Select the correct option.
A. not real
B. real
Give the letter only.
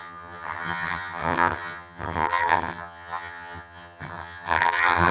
A